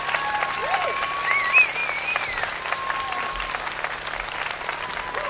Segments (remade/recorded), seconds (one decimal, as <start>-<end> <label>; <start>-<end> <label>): 0.0-5.3 recorded

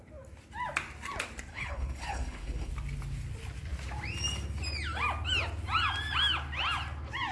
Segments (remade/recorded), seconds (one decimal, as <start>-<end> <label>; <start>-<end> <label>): 0.0-1.5 recorded; 1.5-2.7 remade; 2.7-7.3 recorded

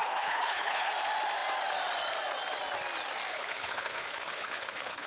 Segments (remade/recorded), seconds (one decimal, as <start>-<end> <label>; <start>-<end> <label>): 0.0-0.9 remade; 0.9-3.3 recorded; 3.3-5.1 remade